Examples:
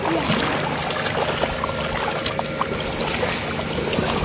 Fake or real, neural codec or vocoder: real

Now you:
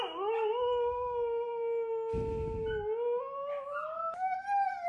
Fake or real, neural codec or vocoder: real